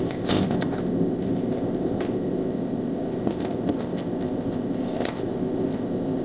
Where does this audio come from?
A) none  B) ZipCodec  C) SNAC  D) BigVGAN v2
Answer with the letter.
B